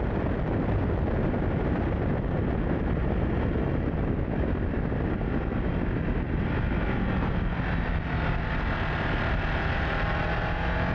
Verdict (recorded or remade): recorded